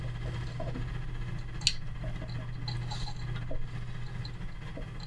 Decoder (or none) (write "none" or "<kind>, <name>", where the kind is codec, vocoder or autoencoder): none